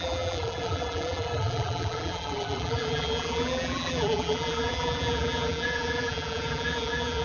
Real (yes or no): no